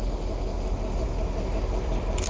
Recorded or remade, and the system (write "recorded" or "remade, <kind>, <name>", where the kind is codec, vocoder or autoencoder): recorded